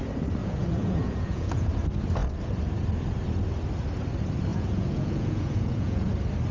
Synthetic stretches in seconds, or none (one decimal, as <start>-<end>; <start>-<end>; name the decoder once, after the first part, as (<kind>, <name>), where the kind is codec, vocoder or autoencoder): 0.4-1.7 (vocoder, Vocos); 4.5-6.1